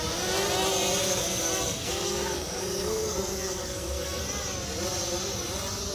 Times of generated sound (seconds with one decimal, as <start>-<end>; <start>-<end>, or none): 1.0-4.2